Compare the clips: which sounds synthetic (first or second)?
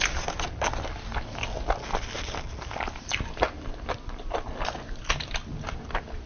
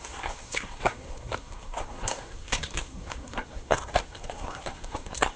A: second